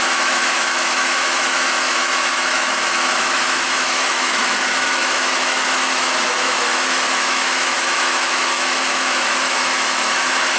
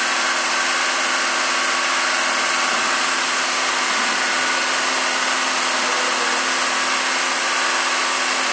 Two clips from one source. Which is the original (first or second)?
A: second